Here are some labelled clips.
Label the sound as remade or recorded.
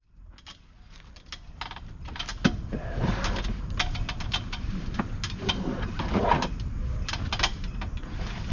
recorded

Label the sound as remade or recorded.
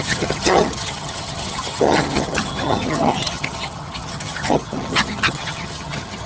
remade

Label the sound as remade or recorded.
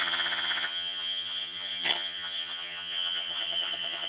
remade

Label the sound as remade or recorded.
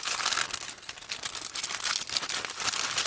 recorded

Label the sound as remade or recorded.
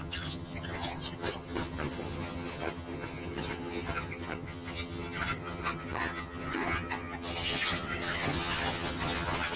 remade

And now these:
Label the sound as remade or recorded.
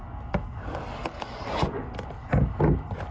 recorded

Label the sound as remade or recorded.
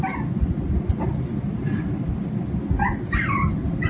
recorded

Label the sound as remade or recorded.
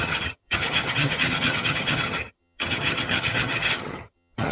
remade